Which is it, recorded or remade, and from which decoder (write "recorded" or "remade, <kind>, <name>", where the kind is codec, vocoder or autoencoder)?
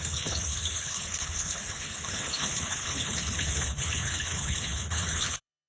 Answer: remade, codec, HILCodec